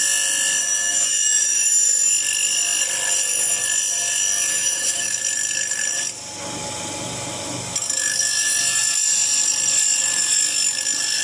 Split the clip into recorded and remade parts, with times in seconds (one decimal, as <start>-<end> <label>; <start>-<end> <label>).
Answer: 0.0-0.6 recorded; 0.6-2.1 remade; 2.1-4.5 recorded; 4.5-5.2 remade; 5.2-11.2 recorded